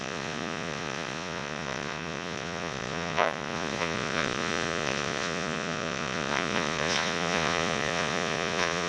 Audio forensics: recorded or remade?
remade